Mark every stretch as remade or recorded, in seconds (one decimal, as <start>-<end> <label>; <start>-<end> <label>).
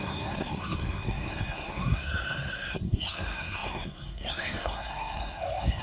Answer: 0.0-5.8 remade